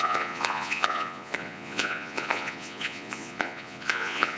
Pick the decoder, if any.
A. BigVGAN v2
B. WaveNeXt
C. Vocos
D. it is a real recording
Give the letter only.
C